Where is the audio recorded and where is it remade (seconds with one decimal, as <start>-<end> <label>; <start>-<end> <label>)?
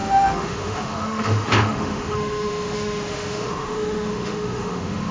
0.0-5.1 remade